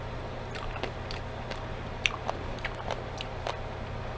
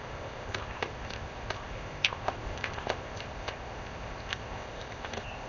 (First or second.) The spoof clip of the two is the second